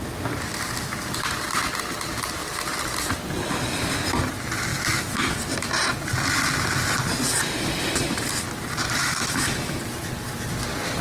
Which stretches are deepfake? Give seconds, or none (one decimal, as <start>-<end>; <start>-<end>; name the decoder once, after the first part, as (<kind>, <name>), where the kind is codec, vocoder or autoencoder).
9.0-9.8 (autoencoder, DAC-VAE)